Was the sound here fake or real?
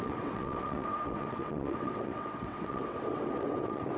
fake